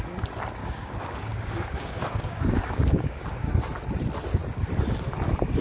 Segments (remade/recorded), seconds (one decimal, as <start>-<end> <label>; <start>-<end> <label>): 0.0-0.6 recorded; 0.6-3.5 remade; 3.5-5.6 recorded